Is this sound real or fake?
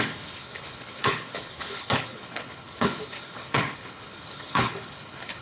fake